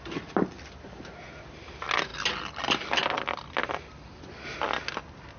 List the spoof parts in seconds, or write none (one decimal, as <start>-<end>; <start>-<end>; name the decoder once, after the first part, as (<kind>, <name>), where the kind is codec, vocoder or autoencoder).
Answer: none